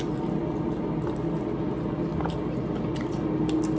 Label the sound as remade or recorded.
recorded